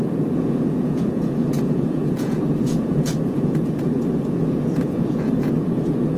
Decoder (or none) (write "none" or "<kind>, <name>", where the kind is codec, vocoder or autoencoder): vocoder, Vocos